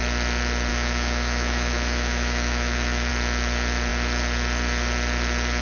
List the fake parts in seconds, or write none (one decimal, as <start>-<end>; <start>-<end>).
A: 0.7-3.1